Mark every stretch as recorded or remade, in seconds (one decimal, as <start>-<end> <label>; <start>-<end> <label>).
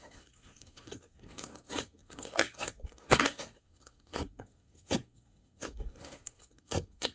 0.0-7.1 remade